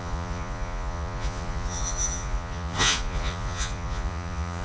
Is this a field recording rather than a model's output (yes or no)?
no